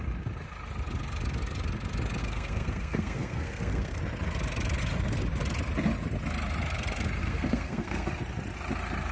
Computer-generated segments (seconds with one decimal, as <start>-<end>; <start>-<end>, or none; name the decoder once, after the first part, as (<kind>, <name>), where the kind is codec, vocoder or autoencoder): 2.2-4.0 (codec, SNAC); 7.2-8.1

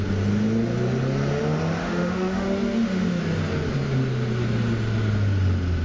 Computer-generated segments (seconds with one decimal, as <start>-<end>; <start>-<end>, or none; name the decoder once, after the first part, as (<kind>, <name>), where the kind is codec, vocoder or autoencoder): 1.8-3.2 (autoencoder, DAC-VAE)

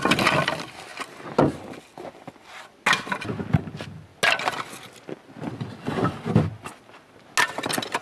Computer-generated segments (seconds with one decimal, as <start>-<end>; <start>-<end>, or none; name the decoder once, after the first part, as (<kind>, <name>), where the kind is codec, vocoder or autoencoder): none

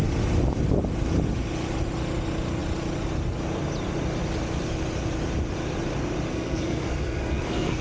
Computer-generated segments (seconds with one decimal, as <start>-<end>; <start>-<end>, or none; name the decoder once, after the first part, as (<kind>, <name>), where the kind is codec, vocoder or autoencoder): 6.3-7.8 (codec, SNAC)

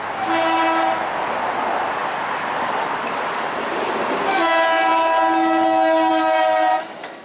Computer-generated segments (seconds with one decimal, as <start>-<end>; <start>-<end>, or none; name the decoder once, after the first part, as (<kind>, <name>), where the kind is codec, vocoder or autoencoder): none